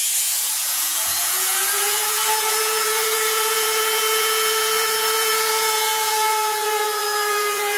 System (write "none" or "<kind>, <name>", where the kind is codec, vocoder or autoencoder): vocoder, Vocos